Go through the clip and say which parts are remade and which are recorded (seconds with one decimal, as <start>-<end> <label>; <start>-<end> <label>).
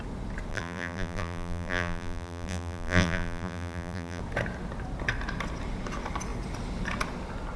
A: 0.0-0.5 recorded; 0.5-4.2 remade; 4.2-7.6 recorded